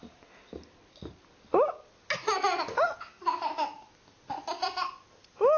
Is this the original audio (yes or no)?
yes